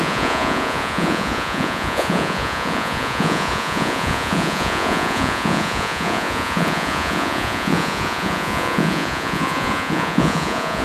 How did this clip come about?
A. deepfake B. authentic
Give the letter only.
A